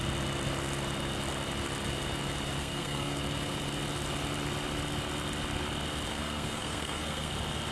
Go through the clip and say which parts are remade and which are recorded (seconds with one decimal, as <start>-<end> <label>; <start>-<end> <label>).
0.0-2.6 recorded; 2.6-3.2 remade; 3.2-6.1 recorded; 6.1-7.3 remade; 7.3-7.7 recorded